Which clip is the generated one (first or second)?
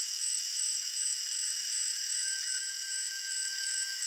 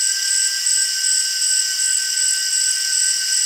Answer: first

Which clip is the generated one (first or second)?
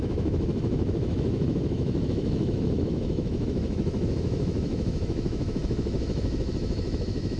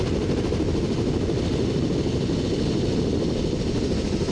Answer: first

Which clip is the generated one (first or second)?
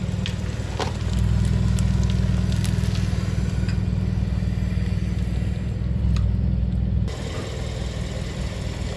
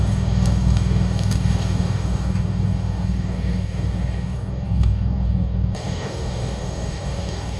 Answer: second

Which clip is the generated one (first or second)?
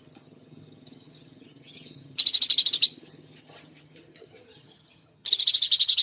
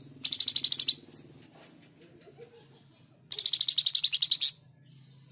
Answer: first